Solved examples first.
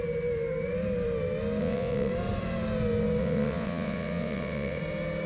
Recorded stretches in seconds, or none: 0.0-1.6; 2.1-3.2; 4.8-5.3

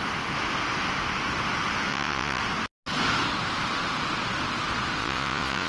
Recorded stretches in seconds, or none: 0.0-1.9; 2.4-5.0